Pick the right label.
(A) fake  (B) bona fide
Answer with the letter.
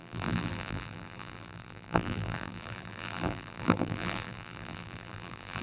A